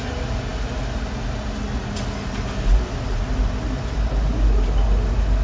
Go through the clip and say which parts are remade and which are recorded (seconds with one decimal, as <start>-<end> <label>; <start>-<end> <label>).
0.0-5.4 recorded